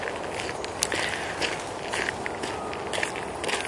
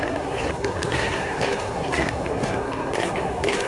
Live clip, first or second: first